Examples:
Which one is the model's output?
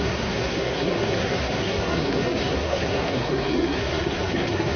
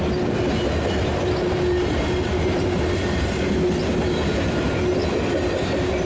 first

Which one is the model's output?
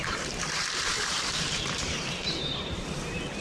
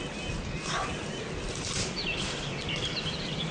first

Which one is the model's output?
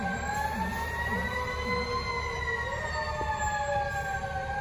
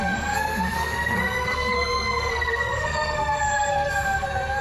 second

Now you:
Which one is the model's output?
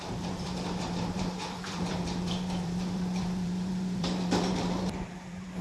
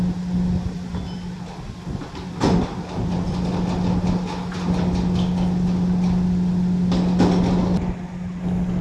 first